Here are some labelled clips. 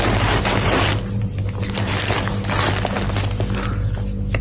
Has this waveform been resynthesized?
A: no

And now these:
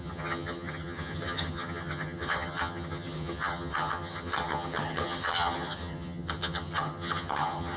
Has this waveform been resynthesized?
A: yes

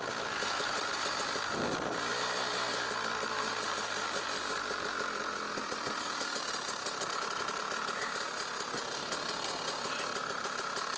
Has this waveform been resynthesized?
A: no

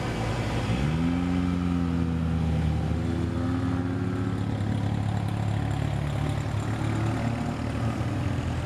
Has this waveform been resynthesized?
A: no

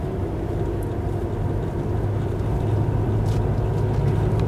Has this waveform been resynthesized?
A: no